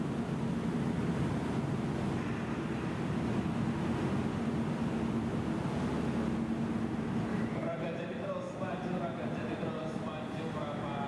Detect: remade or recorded recorded